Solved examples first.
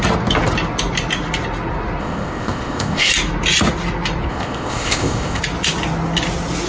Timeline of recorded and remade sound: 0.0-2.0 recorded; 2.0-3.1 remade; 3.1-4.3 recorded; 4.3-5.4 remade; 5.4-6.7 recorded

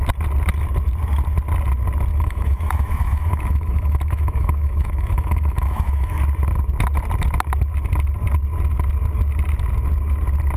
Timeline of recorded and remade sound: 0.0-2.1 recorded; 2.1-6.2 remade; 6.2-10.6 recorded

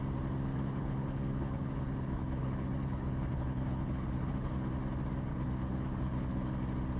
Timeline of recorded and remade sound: 0.0-0.5 recorded; 0.5-4.7 remade; 4.7-5.3 recorded; 5.3-6.5 remade; 6.5-7.0 recorded

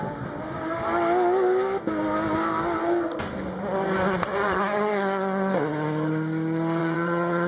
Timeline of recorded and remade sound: 0.0-6.8 recorded; 6.8-7.5 remade